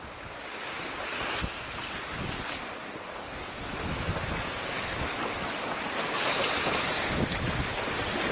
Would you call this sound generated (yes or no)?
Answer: no